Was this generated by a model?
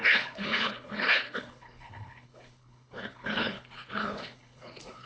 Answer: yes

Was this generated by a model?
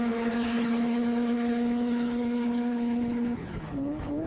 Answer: yes